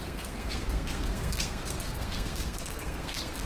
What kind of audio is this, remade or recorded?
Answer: remade